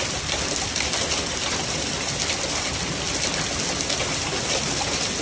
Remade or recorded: recorded